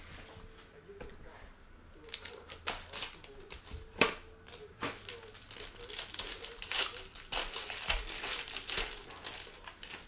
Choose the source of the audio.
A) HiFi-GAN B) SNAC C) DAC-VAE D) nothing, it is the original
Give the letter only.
D